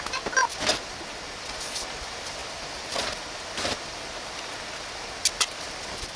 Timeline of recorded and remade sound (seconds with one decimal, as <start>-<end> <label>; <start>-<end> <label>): 0.0-6.2 recorded